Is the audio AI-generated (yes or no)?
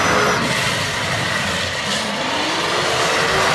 no